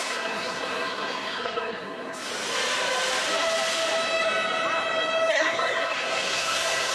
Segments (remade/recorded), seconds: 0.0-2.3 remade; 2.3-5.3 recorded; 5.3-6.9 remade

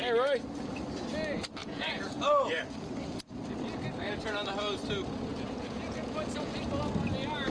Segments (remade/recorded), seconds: 0.0-1.6 recorded; 1.6-2.6 remade; 2.6-5.3 recorded; 5.3-6.5 remade; 6.5-7.5 recorded